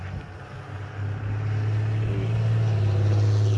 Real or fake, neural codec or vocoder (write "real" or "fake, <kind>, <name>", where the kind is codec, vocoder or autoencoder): real